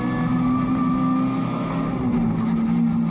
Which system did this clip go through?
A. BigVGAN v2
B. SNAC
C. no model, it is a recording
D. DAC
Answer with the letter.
C